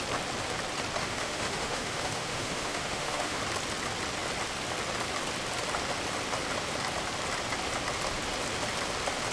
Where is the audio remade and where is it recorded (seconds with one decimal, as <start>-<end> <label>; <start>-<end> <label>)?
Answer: 0.0-1.0 recorded; 1.0-3.4 remade; 3.4-9.3 recorded